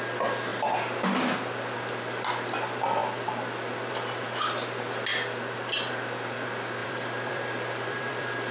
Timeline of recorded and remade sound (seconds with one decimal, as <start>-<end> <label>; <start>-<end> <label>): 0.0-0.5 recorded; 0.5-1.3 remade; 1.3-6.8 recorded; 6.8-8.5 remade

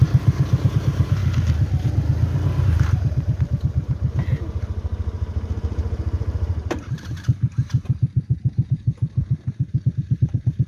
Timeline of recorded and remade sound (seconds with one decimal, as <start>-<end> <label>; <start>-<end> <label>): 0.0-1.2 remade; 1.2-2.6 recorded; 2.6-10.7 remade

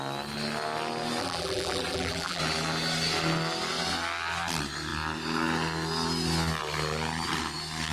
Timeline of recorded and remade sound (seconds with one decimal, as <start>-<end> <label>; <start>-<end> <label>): 0.0-1.2 recorded; 1.2-2.4 remade; 2.4-7.9 recorded

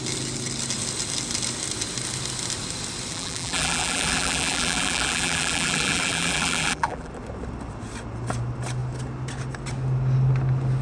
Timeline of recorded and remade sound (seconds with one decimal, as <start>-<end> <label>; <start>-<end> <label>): 0.0-3.1 recorded; 3.1-7.1 remade; 7.1-10.8 recorded